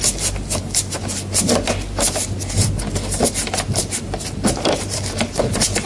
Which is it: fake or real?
real